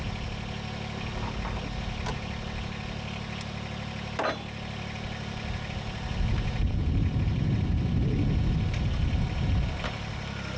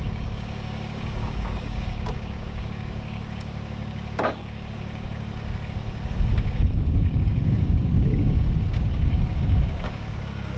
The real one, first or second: first